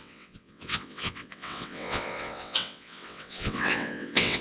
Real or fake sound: fake